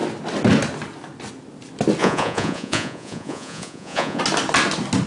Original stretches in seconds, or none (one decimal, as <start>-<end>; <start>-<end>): 0.0-2.0; 4.2-5.1